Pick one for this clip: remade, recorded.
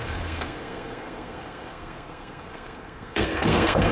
remade